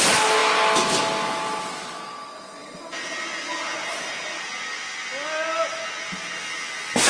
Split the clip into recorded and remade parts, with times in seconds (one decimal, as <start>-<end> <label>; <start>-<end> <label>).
0.0-7.1 recorded